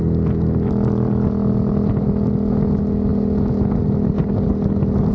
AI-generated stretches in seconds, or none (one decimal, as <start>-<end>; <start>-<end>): none